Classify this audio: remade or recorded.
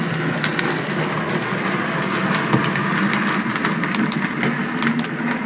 recorded